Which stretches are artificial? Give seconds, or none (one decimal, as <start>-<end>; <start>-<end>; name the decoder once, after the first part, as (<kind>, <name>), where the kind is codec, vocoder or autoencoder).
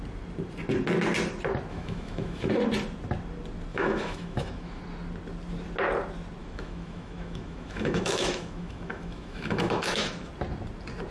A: 1.7-2.5 (autoencoder, DAC-VAE); 3.7-4.8; 6.4-10.3